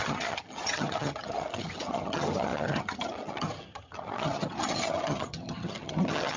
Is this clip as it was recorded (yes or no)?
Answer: no